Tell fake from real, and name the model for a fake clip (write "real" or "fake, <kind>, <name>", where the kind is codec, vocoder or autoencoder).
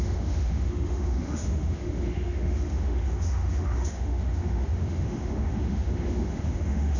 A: fake, autoencoder, DAC-VAE